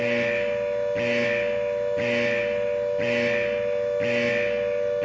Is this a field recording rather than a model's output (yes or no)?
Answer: yes